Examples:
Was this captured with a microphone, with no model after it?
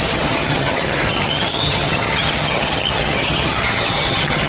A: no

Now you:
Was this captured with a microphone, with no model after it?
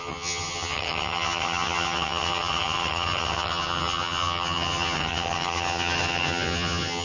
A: no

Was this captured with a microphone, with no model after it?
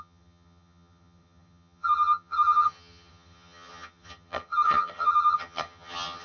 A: no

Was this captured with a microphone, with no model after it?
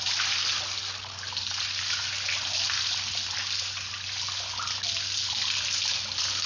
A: yes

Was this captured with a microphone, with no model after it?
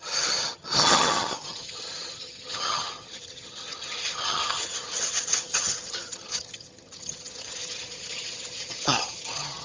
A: no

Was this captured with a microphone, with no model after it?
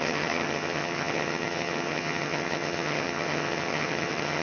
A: no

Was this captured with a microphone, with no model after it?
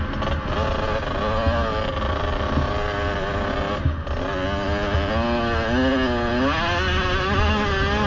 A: yes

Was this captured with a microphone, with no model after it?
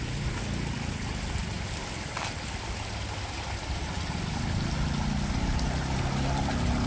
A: yes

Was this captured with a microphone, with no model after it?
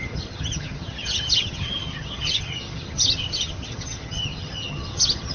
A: no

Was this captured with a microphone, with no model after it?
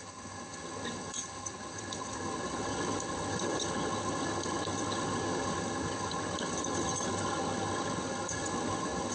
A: no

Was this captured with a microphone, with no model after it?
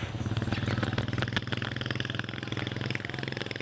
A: yes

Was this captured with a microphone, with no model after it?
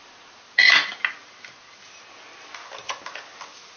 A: yes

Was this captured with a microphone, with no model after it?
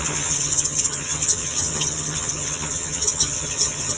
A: no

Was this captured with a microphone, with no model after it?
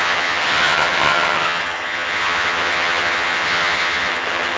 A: no